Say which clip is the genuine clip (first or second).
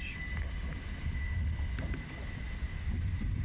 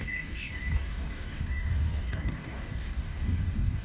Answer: first